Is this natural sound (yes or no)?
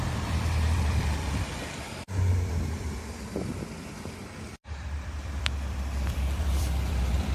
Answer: no